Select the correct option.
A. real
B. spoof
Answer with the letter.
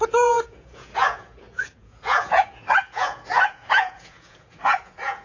B